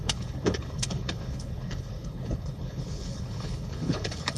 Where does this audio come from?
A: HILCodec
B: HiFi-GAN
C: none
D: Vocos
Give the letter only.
A